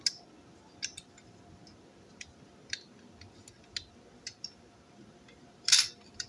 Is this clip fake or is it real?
real